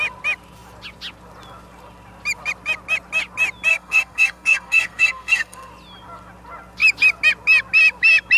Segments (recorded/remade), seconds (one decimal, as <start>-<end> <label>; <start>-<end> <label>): 0.0-3.7 recorded; 3.7-5.7 remade; 5.7-8.4 recorded